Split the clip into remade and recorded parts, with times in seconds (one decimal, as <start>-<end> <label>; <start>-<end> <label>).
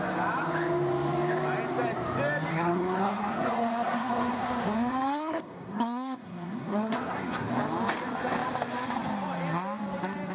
0.0-2.5 recorded; 2.5-7.5 remade; 7.5-10.3 recorded